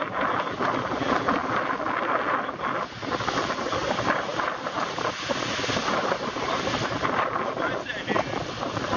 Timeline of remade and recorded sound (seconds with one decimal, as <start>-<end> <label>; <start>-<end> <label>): 0.0-9.0 recorded